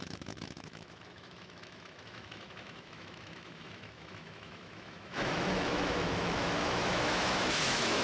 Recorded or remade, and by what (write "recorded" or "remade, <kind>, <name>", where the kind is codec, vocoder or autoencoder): remade, autoencoder, DAC-VAE